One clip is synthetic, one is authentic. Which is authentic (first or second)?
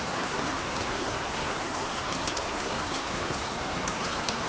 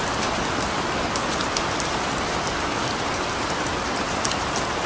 second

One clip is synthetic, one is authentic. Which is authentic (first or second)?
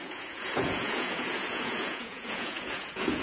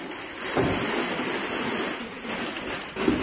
second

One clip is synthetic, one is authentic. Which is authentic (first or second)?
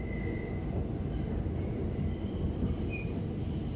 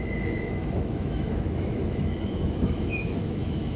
first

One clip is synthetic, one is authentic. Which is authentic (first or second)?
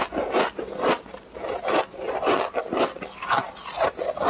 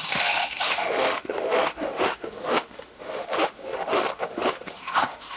first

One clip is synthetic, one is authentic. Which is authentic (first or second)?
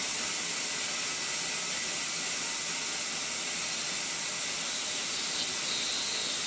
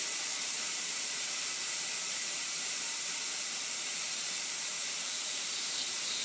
first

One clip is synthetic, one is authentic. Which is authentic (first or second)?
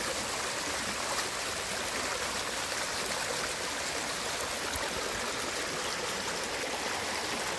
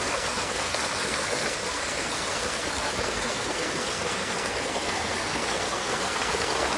first